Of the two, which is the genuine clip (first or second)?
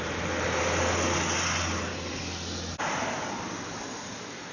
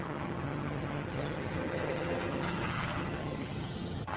first